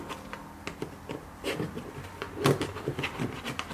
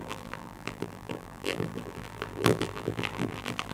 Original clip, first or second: first